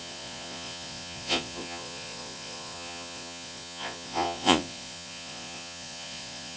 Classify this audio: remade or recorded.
remade